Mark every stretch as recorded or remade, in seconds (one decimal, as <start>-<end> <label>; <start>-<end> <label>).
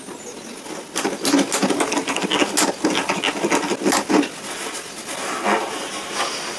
0.0-6.6 recorded